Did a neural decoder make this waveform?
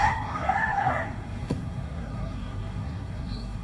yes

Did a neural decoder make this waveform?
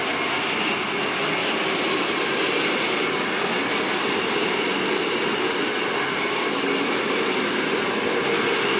no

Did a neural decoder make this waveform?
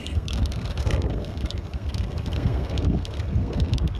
yes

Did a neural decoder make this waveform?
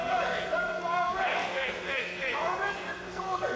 yes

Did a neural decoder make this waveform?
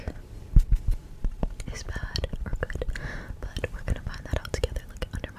no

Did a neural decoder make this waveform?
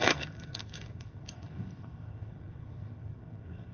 yes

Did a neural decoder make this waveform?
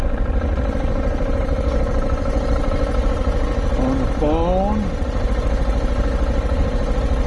no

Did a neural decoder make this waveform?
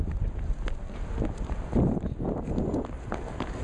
no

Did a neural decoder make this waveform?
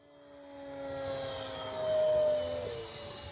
no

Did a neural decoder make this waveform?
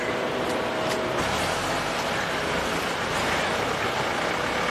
no